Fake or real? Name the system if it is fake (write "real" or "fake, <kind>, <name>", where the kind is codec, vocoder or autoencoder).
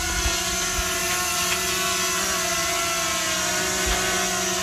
real